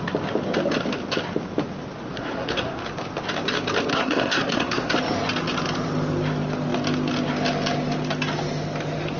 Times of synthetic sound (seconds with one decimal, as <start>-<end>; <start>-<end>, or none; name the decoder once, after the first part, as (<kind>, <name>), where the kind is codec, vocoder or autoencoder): 2.1-2.8 (codec, SNAC); 3.9-4.9